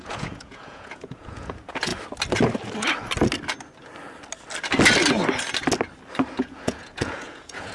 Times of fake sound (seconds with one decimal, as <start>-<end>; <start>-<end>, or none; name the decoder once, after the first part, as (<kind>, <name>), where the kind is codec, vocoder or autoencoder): 0.0-1.9 (vocoder, Vocos); 6.4-7.7